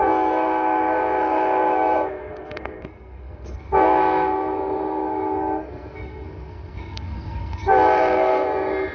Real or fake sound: fake